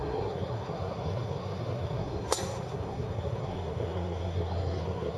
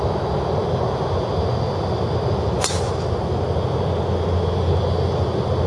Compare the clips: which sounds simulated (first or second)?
first